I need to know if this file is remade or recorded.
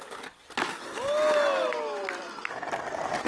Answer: recorded